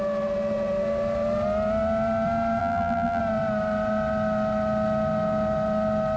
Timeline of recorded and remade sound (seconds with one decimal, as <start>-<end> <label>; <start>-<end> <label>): 0.0-2.6 recorded; 2.6-3.2 remade; 3.2-6.2 recorded